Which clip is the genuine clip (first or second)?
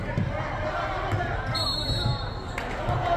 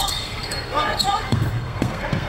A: first